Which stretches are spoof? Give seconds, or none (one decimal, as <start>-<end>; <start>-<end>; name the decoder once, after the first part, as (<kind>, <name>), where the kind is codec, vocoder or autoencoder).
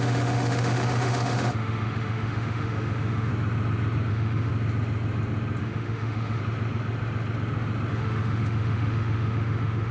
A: 0.0-3.3 (autoencoder, DAC-VAE); 4.1-4.5; 5.6-6.4; 7.9-9.9